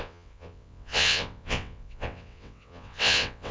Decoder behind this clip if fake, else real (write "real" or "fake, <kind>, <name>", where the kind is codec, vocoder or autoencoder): fake, vocoder, WaveNeXt